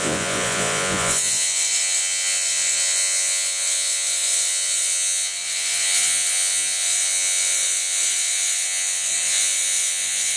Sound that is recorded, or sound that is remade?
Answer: remade